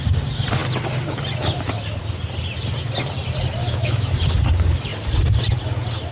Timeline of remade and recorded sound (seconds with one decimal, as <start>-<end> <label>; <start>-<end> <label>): 0.0-3.6 recorded; 3.6-4.1 remade; 4.1-6.1 recorded